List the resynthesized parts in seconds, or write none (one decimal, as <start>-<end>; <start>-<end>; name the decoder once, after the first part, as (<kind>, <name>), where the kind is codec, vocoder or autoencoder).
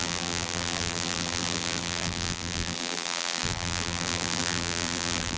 0.0-5.4 (vocoder, BigVGAN v2)